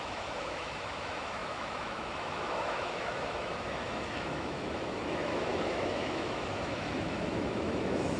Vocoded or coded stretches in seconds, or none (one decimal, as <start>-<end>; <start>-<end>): 0.0-8.2

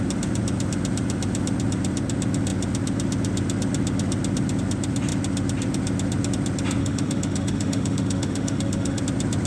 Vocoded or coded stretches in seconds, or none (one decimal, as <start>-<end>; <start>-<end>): 6.8-9.0

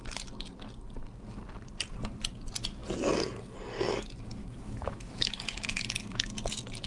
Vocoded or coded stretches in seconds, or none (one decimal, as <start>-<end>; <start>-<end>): 4.4-6.3

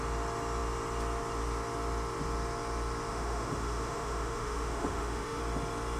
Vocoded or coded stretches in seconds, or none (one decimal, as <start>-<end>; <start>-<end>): 3.1-5.4

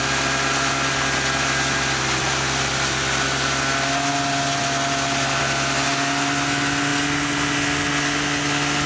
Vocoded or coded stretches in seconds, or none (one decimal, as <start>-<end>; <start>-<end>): none

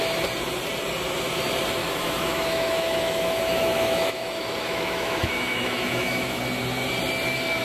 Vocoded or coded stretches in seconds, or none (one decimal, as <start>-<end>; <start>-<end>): 1.8-6.4

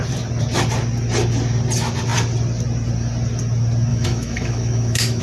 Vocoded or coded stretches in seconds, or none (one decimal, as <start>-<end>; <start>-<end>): 3.9-5.2

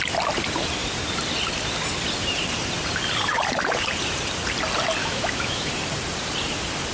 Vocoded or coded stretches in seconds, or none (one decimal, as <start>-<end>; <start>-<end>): 5.0-5.7